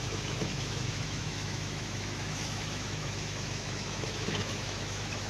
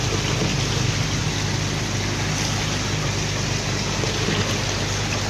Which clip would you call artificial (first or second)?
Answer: first